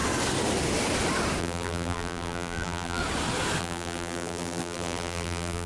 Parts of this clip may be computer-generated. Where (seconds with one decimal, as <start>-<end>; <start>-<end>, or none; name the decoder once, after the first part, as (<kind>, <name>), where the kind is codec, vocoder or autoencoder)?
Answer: 1.4-3.0 (vocoder, BigVGAN v2); 3.6-5.7